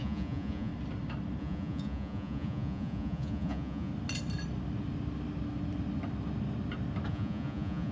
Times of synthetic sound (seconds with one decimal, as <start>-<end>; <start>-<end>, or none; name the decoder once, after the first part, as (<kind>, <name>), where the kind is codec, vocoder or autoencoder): 0.0-0.7 (vocoder, Vocos); 1.4-3.9; 7.1-7.9